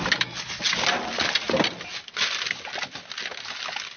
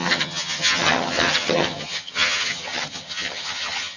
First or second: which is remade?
second